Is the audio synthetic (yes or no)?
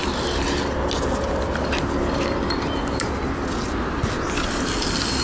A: no